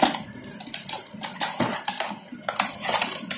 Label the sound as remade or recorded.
recorded